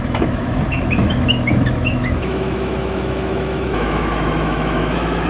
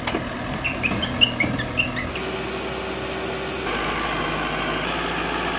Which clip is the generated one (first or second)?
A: first